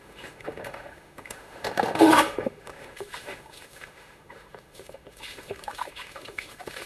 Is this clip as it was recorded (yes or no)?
no